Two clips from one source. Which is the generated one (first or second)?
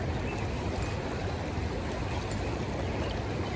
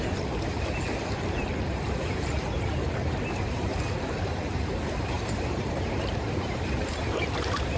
second